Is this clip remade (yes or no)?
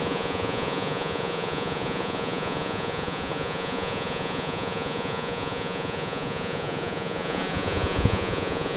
yes